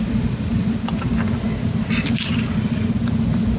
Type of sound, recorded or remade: recorded